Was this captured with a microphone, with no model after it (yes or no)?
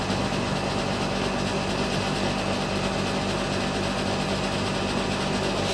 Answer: yes